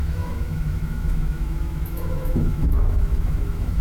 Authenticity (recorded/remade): remade